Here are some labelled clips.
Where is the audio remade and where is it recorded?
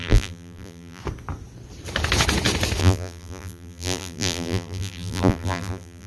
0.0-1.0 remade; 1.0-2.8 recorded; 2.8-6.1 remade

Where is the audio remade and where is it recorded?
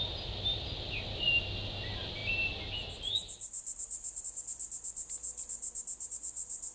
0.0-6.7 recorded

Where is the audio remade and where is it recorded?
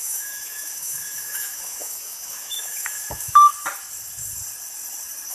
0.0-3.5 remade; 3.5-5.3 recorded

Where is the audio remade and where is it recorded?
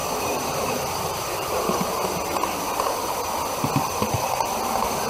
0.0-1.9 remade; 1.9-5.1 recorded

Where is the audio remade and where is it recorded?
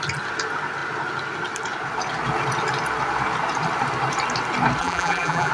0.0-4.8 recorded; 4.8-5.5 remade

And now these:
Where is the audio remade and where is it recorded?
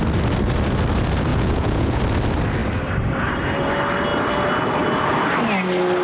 0.0-1.3 recorded; 1.3-2.0 remade; 2.0-6.0 recorded